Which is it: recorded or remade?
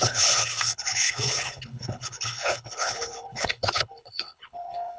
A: remade